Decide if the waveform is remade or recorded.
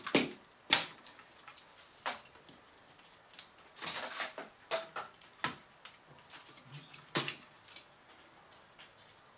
recorded